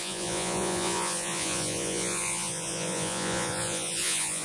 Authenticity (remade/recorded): remade